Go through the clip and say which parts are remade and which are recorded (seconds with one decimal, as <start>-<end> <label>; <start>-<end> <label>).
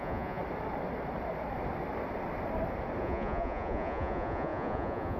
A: 0.0-0.4 remade; 0.4-3.0 recorded; 3.0-5.2 remade